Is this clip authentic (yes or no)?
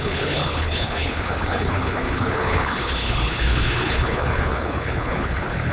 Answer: no